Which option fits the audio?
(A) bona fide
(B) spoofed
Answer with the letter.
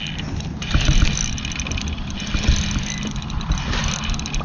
A